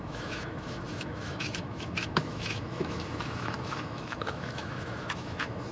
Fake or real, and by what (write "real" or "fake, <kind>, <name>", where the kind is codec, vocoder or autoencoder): fake, autoencoder, DAC-VAE